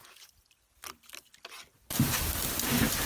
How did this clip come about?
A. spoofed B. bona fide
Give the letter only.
B